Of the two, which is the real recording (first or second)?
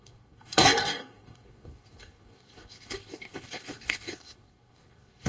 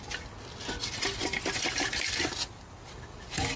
second